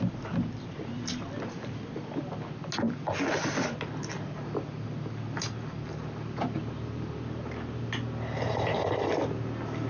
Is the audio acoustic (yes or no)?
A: yes